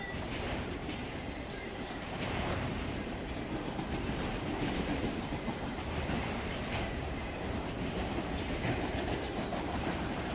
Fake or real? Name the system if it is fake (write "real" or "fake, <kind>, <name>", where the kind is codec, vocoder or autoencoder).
fake, vocoder, BigVGAN v2